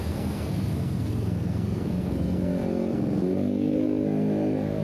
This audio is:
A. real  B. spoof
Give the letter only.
B